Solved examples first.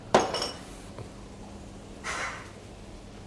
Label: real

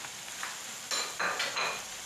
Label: real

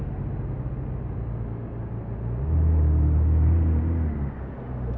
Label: real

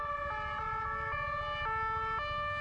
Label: real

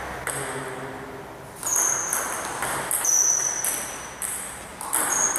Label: real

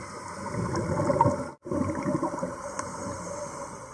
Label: real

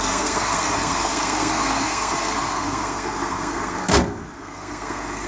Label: fake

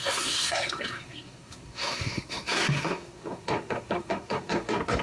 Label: fake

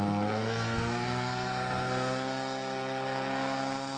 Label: fake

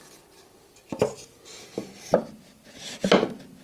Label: real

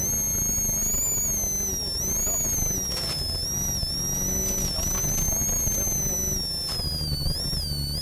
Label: real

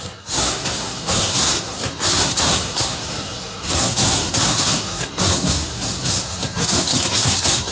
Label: fake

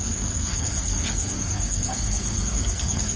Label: fake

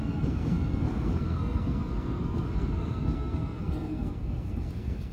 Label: fake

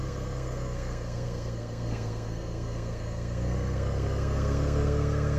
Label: fake